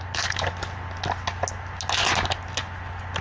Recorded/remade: recorded